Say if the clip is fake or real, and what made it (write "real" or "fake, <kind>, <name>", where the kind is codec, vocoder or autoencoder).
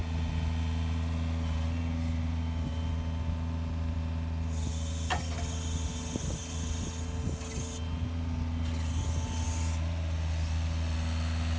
real